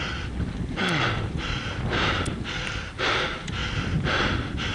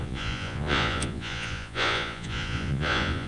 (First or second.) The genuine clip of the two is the first